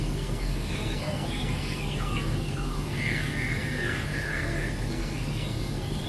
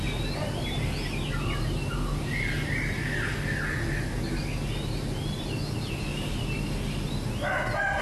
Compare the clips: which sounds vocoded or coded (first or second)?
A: first